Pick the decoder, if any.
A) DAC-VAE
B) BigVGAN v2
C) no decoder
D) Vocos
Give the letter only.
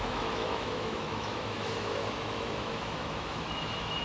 A